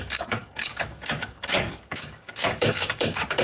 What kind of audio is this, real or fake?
fake